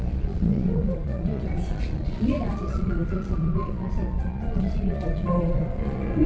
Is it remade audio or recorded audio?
remade